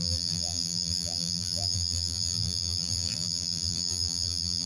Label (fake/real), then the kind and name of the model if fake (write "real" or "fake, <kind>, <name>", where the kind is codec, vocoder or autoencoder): fake, vocoder, BigVGAN v2